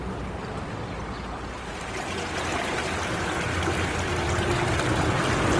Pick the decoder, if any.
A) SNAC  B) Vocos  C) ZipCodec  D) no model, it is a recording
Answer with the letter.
D